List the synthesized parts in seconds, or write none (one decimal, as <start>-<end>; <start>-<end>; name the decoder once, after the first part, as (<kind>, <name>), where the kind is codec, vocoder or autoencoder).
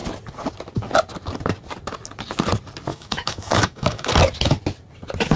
2.9-4.1 (autoencoder, DAC-VAE)